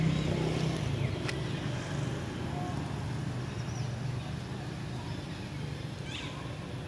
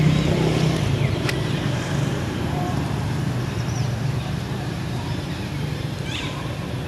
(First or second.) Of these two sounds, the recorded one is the first